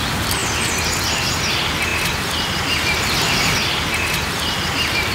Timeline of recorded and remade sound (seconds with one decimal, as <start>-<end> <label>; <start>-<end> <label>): 0.0-5.1 recorded